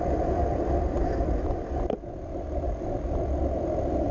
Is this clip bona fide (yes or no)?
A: no